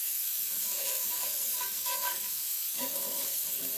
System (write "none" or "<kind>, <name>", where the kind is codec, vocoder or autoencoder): codec, SNAC